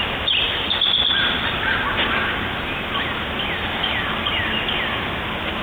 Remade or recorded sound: recorded